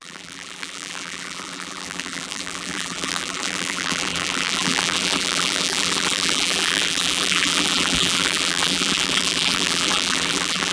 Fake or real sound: fake